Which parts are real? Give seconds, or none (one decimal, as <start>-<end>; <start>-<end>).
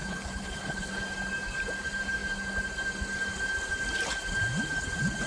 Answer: 0.9-5.3